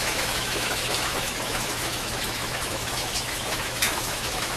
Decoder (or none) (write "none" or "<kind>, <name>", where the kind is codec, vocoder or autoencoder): autoencoder, DAC-VAE